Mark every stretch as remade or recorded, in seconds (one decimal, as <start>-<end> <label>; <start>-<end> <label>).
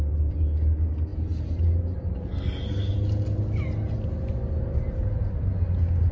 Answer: 0.0-6.1 recorded